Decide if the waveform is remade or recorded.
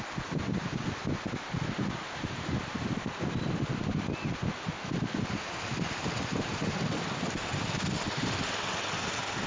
recorded